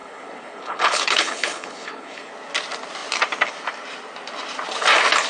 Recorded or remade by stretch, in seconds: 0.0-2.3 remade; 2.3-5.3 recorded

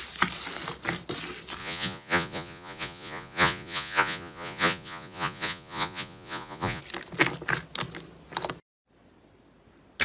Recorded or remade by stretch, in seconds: 0.0-1.6 recorded; 1.6-6.8 remade; 6.8-10.0 recorded

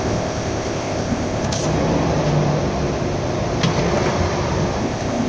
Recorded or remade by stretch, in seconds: 0.0-1.6 remade; 1.6-4.8 recorded; 4.8-5.3 remade

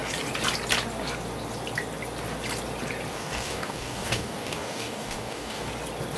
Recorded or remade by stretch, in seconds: 0.0-3.1 recorded; 3.1-5.7 remade; 5.7-6.2 recorded

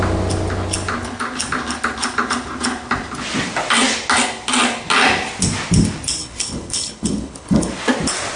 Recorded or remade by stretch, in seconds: 0.0-6.2 recorded; 6.2-7.7 remade; 7.7-8.4 recorded

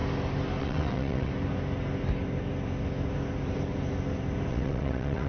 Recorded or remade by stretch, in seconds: 0.0-0.6 recorded; 0.6-1.3 remade; 1.3-4.5 recorded; 4.5-5.3 remade

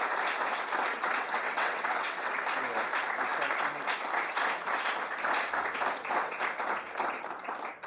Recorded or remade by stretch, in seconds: 0.0-0.9 recorded; 0.9-2.3 remade; 2.3-7.9 recorded

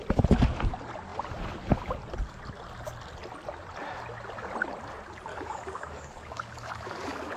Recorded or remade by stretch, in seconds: 0.0-5.3 recorded; 5.3-7.4 remade